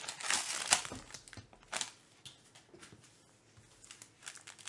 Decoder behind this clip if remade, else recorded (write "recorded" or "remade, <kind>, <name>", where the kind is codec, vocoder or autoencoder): recorded